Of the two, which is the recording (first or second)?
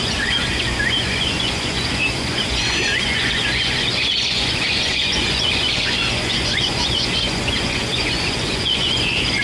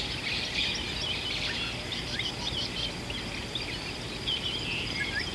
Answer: second